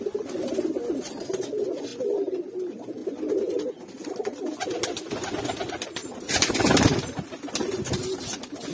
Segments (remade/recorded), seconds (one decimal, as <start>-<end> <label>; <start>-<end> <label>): 0.0-1.9 recorded; 1.9-2.6 remade; 2.6-3.0 recorded; 3.0-3.7 remade; 3.7-6.0 recorded; 6.0-8.0 remade; 8.0-8.7 recorded